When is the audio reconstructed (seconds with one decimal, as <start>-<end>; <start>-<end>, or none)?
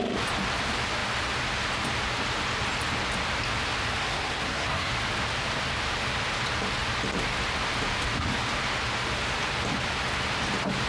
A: 4.0-4.9